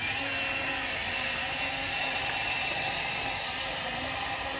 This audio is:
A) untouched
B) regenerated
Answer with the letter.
A